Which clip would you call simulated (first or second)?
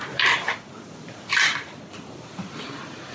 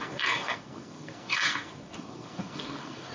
second